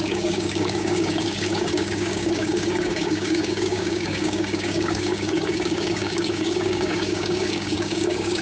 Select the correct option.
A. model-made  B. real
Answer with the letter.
A